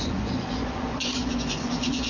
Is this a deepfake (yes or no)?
yes